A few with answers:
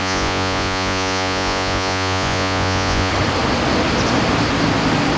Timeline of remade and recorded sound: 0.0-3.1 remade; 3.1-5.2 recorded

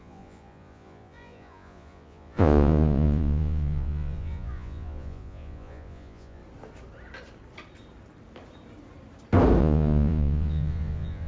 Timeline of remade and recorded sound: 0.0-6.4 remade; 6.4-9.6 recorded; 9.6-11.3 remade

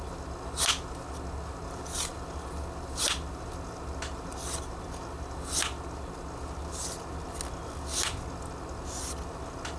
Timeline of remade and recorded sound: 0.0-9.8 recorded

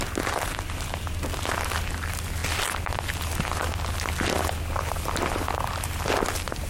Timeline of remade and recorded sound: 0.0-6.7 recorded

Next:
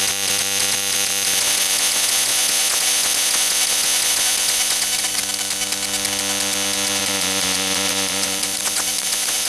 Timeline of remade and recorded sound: 0.0-5.2 remade; 5.2-7.0 recorded; 7.0-9.5 remade

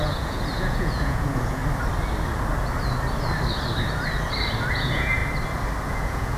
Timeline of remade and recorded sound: 0.0-1.6 remade; 1.6-4.7 recorded; 4.7-5.2 remade; 5.2-5.9 recorded; 5.9-6.4 remade

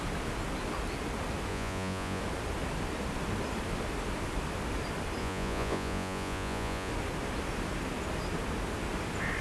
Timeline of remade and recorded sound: 0.0-1.5 recorded; 1.5-2.2 remade; 2.2-5.2 recorded; 5.2-6.9 remade; 6.9-9.4 recorded